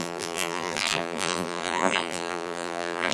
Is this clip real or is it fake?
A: fake